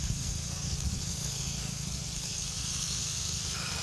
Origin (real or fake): fake